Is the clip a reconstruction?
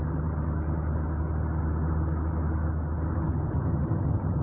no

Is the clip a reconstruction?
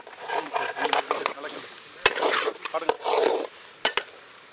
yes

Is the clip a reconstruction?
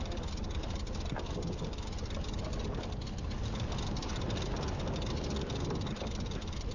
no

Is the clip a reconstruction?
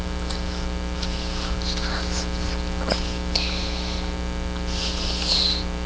no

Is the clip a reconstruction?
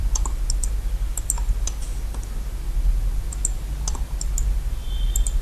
no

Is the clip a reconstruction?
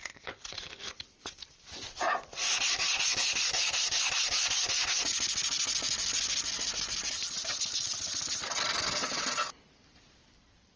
yes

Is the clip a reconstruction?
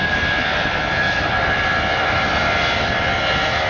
yes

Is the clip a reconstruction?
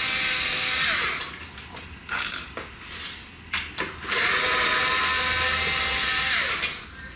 no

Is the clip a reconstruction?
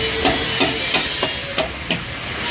no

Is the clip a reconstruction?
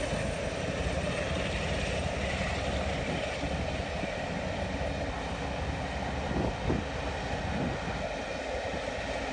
no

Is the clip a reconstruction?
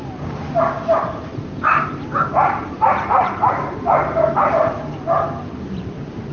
yes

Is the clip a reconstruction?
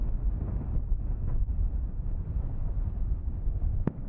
no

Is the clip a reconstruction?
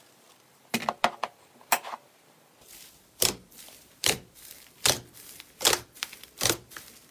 yes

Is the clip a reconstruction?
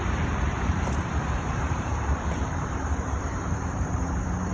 yes